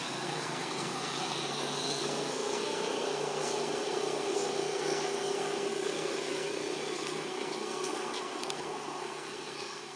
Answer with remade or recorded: remade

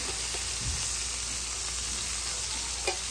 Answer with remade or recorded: recorded